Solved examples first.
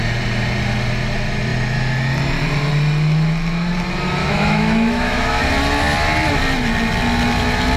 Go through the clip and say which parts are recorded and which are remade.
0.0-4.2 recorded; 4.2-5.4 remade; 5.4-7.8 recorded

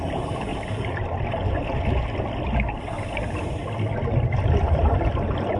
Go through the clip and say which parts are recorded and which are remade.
0.0-0.5 remade; 0.5-3.2 recorded; 3.2-3.6 remade; 3.6-4.7 recorded; 4.7-5.6 remade

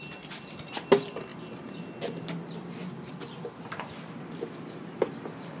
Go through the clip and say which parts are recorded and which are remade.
0.0-5.6 recorded

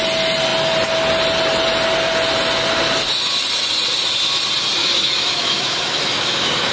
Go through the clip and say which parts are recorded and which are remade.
0.0-4.8 recorded; 4.8-6.7 remade

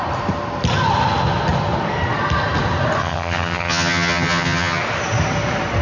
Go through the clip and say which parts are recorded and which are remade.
0.0-3.0 recorded; 3.0-4.8 remade; 4.8-5.8 recorded

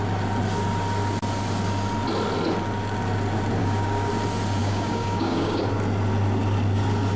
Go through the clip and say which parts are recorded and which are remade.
0.0-3.6 recorded; 3.6-4.1 remade; 4.1-4.6 recorded; 4.6-5.6 remade; 5.6-7.2 recorded

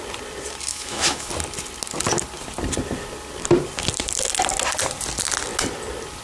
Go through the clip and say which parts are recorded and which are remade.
0.0-0.7 recorded; 0.7-1.3 remade; 1.3-6.2 recorded

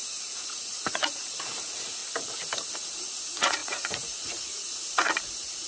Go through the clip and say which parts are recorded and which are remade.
0.0-2.0 remade; 2.0-2.7 recorded; 2.7-5.7 remade